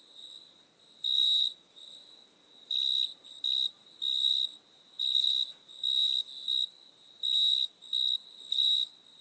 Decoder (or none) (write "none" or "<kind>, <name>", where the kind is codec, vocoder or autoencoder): none